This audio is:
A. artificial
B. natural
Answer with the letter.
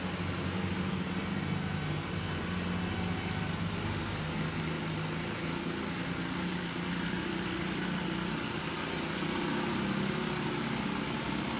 B